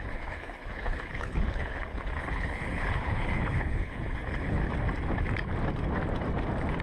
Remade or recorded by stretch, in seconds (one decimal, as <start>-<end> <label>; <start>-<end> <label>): 0.0-4.6 remade; 4.6-6.8 recorded